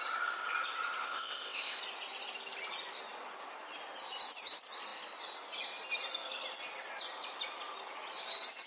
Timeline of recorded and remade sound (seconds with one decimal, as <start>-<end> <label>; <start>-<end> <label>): 0.0-1.0 recorded; 1.0-1.8 remade; 1.8-8.7 recorded